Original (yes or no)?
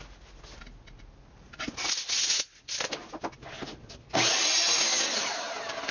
yes